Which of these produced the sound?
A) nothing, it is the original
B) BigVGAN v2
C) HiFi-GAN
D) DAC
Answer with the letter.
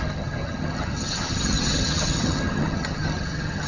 C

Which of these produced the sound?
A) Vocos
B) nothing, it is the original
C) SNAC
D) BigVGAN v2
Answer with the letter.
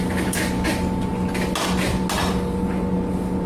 B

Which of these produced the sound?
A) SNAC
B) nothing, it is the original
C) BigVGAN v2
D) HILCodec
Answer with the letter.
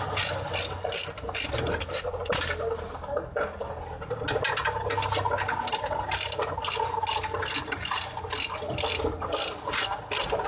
B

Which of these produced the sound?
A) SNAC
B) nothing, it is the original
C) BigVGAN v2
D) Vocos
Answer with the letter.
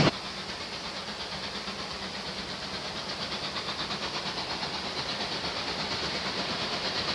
C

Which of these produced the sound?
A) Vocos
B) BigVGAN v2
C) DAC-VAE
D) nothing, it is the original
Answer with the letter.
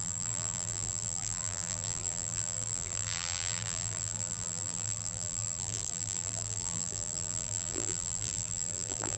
B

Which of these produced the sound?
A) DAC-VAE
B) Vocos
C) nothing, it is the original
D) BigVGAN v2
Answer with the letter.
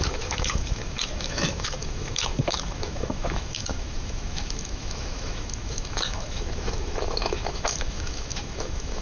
A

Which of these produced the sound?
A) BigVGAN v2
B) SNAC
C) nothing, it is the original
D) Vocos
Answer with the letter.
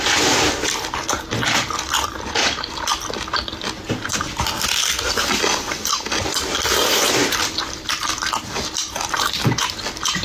A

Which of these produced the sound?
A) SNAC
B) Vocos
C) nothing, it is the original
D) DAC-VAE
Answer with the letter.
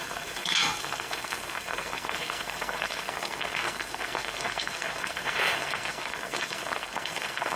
A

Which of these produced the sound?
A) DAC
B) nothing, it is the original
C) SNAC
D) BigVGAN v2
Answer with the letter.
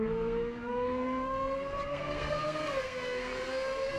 C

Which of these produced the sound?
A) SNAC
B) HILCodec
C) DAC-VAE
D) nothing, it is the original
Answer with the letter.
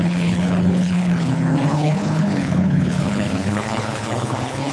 B